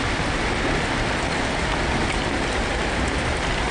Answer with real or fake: real